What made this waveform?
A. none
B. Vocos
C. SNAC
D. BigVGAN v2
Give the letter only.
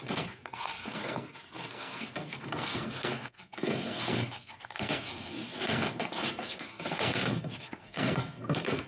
C